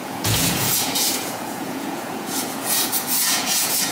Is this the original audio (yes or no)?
no